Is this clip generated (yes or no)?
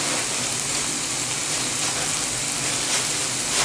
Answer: no